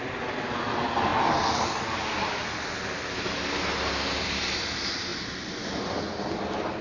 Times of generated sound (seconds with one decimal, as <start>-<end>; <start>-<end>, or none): none